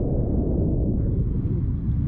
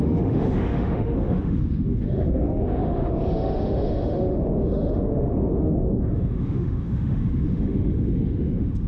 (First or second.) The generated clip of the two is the second